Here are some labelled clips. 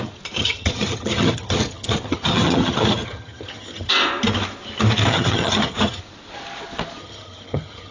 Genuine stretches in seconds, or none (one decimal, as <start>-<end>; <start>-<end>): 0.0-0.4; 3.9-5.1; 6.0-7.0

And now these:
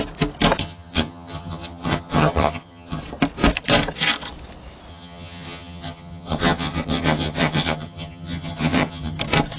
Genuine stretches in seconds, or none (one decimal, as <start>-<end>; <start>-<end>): 0.0-0.6; 3.0-4.9; 9.2-9.6

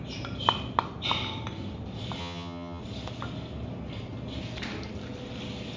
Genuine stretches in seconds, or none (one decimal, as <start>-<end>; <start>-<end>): 0.0-2.2; 2.8-5.8

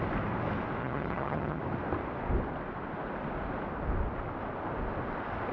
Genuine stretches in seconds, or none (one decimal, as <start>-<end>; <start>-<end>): 0.0-0.8; 1.6-5.5

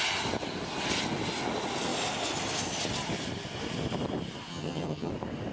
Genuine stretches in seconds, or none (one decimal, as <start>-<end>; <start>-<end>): 0.0-4.5; 5.1-5.5

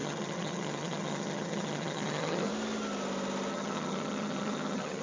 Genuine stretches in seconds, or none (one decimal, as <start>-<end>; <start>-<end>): 2.5-3.5